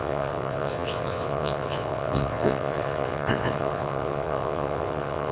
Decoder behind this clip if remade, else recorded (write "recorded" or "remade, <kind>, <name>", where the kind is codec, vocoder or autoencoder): remade, vocoder, WaveNeXt